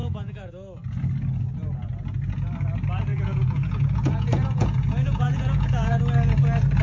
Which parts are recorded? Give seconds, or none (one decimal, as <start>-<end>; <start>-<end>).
0.5-3.1; 6.0-6.8